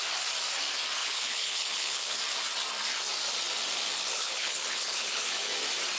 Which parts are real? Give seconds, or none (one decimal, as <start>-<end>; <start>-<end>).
0.0-1.0; 2.2-4.1; 5.5-6.0